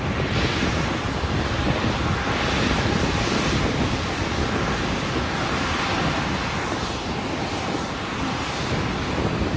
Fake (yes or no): no